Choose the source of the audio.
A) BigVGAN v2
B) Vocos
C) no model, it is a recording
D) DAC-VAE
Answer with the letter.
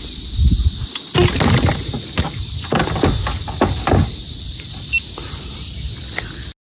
C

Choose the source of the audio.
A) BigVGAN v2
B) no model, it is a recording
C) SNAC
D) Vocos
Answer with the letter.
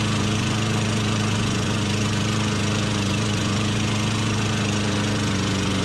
D